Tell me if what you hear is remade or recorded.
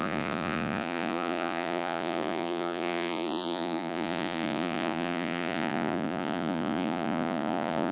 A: remade